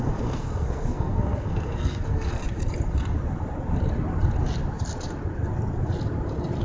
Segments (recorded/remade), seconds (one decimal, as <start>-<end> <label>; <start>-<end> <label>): 0.0-2.4 remade; 2.4-6.6 recorded